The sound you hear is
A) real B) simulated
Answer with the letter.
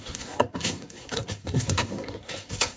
B